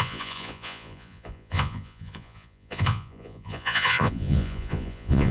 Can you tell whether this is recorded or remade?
remade